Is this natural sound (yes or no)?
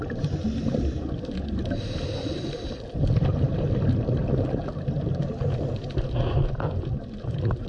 yes